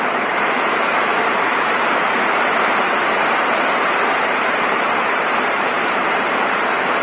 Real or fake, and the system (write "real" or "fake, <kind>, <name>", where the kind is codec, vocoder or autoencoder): fake, vocoder, BigVGAN v2